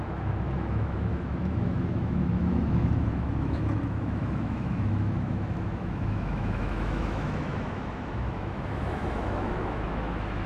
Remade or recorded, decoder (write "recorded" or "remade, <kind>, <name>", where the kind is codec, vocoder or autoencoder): remade, autoencoder, DAC-VAE